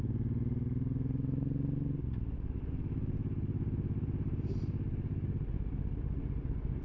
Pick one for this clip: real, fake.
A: real